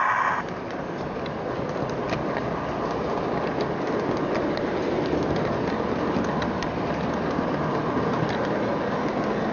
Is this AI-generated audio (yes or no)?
no